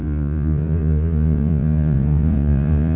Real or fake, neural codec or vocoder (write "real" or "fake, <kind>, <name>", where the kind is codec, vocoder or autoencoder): fake, vocoder, Vocos